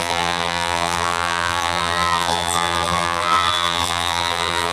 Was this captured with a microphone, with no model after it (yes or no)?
no